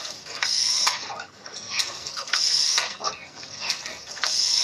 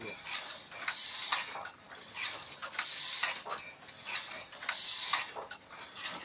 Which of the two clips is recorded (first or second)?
second